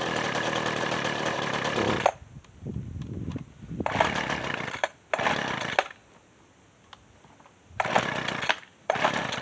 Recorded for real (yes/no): yes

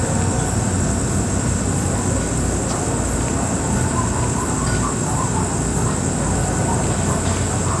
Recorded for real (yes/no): yes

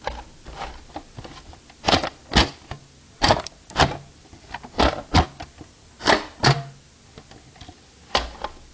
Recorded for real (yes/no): yes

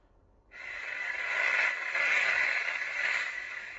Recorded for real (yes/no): no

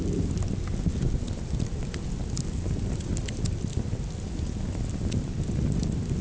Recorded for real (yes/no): yes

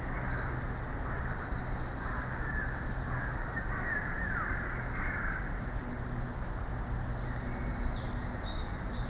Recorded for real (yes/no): yes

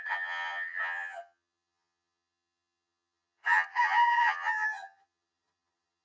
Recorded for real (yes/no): no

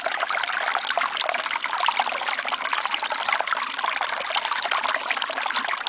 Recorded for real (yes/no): yes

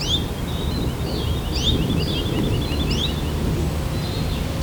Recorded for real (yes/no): yes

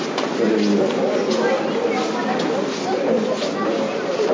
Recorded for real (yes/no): yes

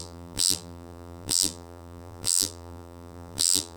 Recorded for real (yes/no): no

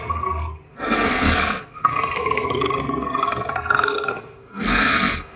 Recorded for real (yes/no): no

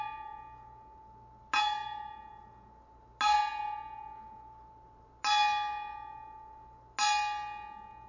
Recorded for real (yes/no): yes